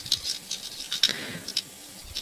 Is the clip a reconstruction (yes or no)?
no